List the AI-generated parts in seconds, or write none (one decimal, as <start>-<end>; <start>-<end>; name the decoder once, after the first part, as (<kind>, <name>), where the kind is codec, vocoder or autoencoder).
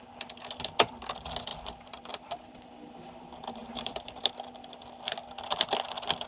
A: 1.5-2.7 (vocoder, BigVGAN v2); 3.6-4.2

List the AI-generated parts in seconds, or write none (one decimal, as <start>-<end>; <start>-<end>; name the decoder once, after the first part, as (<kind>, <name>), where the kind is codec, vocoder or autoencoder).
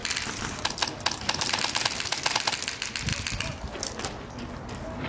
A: 3.1-4.0 (vocoder, BigVGAN v2)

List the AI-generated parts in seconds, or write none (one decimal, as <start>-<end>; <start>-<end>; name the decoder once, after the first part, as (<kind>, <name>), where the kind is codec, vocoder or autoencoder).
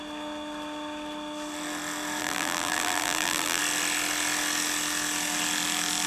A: 2.2-3.6 (vocoder, BigVGAN v2)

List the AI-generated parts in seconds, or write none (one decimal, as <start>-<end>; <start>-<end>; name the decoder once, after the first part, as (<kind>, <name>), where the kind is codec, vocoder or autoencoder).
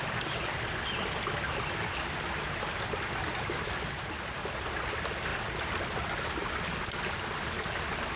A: 5.3-5.8 (vocoder, BigVGAN v2)